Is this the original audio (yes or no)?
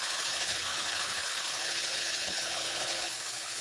no